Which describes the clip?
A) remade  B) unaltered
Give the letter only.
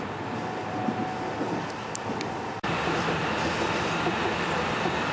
A